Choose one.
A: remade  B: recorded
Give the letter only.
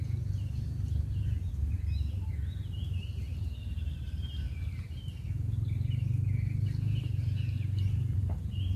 B